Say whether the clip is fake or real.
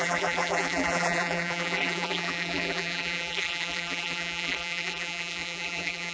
fake